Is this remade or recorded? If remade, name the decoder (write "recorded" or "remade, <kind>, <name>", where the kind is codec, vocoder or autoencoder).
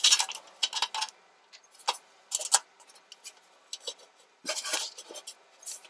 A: recorded